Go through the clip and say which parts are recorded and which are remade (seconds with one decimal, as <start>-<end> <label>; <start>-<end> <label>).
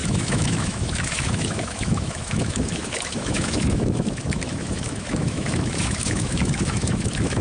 0.0-7.4 remade